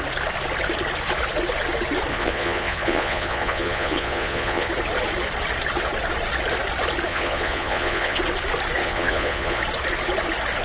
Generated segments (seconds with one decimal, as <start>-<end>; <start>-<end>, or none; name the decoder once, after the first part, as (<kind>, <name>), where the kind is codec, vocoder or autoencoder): 2.1-4.7 (vocoder, Vocos); 7.1-8.2; 8.8-9.6